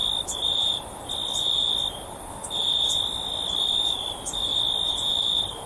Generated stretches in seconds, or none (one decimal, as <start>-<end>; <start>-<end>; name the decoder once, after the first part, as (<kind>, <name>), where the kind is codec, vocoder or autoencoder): none